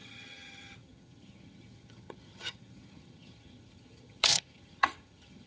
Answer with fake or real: fake